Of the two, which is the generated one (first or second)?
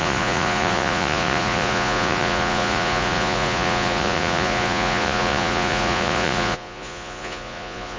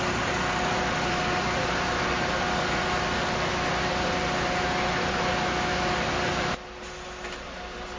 first